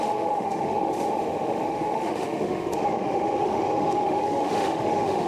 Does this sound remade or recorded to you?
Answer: remade